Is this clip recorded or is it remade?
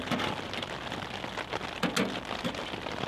recorded